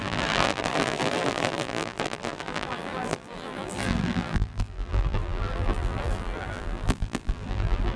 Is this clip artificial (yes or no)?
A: yes